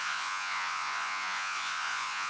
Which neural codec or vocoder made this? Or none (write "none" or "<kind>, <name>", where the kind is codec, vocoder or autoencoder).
vocoder, Vocos